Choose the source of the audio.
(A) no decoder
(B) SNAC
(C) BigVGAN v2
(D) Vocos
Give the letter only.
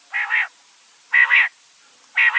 A